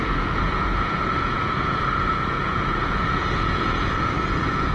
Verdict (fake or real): fake